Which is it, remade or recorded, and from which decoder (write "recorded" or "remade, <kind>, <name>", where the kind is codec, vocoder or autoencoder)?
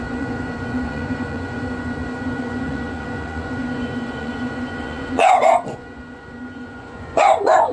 remade, vocoder, Vocos